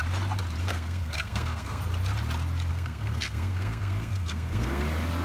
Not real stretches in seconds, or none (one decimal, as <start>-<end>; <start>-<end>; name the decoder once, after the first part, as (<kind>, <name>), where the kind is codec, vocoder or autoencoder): 0.6-1.8 (codec, SNAC); 2.7-4.8